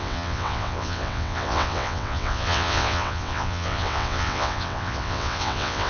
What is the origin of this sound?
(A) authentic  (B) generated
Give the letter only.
B